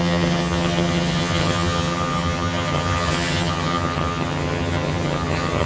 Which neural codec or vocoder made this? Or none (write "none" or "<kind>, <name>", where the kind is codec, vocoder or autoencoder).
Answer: vocoder, HiFi-GAN